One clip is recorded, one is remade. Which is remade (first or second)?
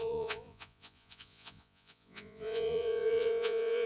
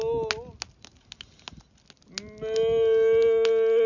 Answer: first